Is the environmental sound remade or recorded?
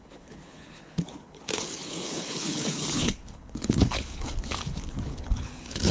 remade